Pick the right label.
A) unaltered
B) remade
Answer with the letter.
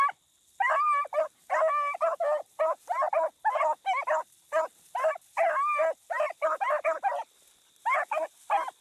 A